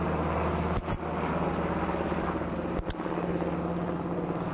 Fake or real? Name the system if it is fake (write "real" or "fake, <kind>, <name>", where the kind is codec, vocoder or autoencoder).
real